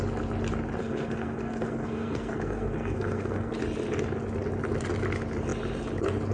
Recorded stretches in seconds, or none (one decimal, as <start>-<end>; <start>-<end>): 0.0-0.8; 3.5-6.3